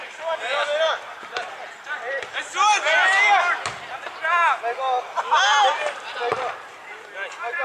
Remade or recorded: recorded